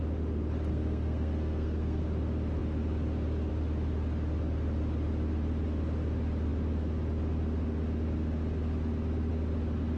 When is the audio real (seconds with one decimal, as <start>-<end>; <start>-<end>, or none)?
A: 0.0-0.7; 2.0-10.0